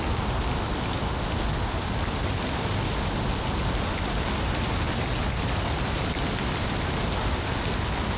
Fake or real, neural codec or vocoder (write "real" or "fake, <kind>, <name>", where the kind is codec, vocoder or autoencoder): real